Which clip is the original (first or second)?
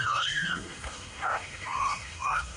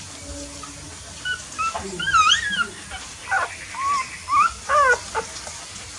second